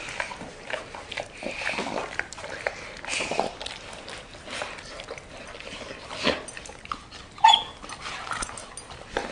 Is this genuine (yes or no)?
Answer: yes